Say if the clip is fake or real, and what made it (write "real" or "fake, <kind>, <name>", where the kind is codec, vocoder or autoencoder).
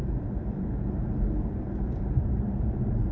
fake, vocoder, BigVGAN v2